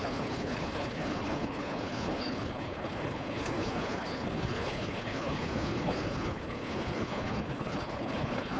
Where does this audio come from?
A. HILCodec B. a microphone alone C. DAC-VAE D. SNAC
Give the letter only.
A